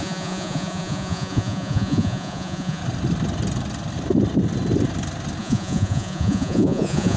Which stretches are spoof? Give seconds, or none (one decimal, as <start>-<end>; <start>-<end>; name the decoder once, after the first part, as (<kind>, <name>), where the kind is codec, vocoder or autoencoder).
0.0-2.8 (vocoder, Vocos); 5.4-7.2